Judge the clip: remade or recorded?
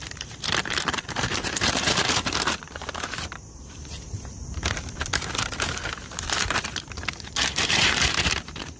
remade